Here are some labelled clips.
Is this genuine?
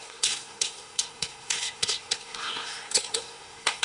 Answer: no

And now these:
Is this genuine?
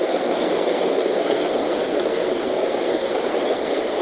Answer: no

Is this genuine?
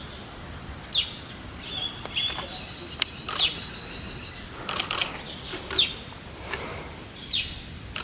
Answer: no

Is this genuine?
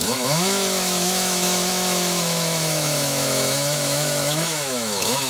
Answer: no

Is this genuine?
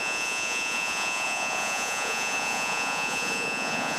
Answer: no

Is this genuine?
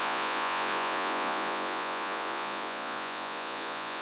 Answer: no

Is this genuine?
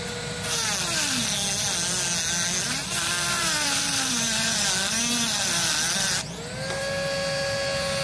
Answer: yes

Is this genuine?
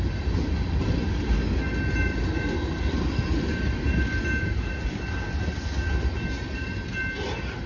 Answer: yes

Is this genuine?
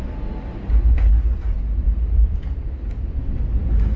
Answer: yes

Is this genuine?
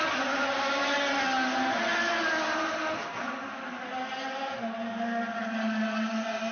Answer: yes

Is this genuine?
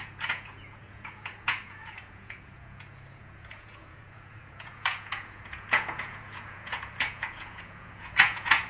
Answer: no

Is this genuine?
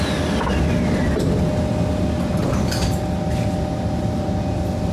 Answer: yes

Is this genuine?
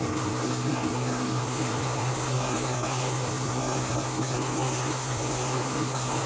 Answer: no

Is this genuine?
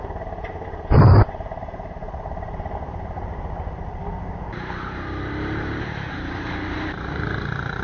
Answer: no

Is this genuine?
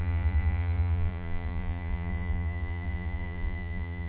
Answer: no